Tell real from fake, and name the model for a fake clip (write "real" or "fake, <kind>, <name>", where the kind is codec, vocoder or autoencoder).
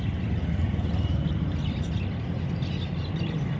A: real